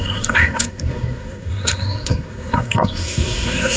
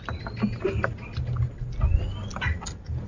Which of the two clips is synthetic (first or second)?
first